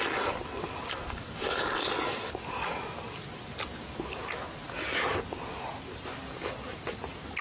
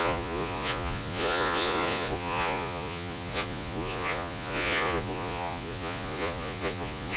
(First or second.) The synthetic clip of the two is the second